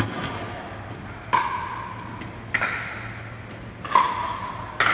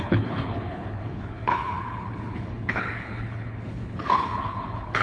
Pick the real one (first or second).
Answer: first